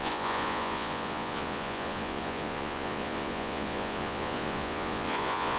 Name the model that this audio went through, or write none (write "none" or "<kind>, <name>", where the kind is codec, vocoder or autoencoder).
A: vocoder, Vocos